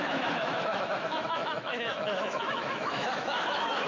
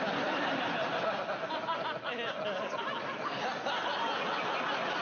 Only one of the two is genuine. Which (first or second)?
second